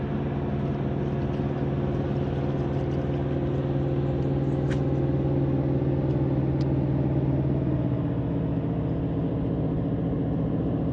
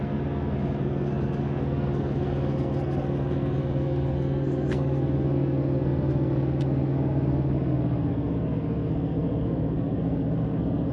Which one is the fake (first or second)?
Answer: second